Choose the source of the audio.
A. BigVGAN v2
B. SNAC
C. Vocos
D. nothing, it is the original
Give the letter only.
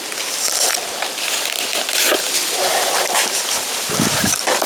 D